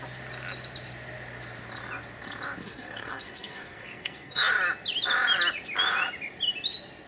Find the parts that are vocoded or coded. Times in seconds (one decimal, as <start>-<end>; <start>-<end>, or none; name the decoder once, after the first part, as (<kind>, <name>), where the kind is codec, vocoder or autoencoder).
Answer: 2.6-4.5 (codec, SNAC)